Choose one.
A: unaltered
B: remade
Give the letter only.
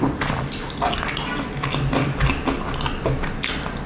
A